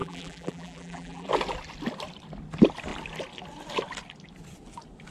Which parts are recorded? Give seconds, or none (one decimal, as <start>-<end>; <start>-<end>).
1.3-5.1